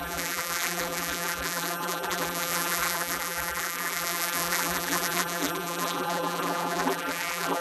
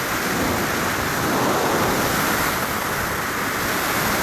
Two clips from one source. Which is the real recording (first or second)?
second